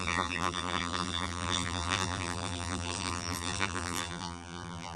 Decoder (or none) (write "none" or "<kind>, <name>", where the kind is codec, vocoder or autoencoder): vocoder, BigVGAN v2